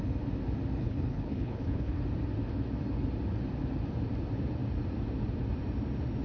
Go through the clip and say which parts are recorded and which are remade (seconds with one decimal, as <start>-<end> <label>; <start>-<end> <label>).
0.0-0.8 recorded; 0.8-2.0 remade; 2.0-6.2 recorded